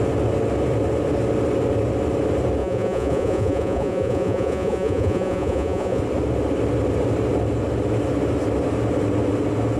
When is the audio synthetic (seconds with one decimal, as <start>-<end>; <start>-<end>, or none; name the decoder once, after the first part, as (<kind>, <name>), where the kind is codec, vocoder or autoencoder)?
2.6-6.0 (vocoder, Vocos)